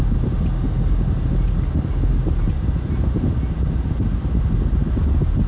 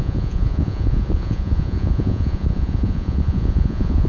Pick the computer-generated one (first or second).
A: second